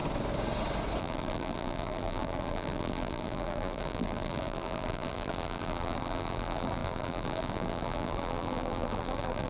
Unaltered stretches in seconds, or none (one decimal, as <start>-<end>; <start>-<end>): 0.0-1.0